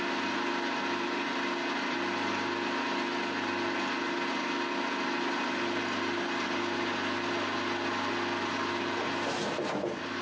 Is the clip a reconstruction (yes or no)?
no